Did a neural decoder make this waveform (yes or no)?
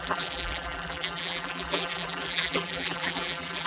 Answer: yes